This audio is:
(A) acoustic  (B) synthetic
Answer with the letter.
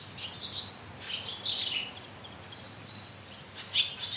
A